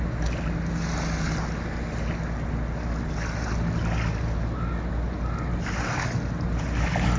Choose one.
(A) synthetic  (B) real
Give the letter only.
B